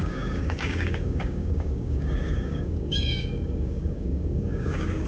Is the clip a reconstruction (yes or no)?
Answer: yes